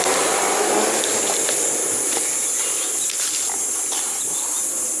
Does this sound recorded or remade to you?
recorded